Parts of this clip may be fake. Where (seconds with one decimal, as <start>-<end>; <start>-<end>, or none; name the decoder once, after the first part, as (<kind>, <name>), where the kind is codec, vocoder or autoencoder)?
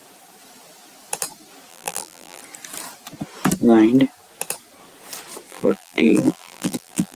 1.7-2.4 (vocoder, BigVGAN v2); 5.5-7.1